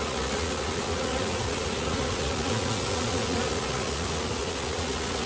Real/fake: fake